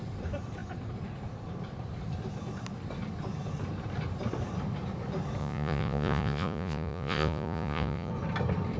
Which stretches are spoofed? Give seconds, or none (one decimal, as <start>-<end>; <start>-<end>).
5.4-8.1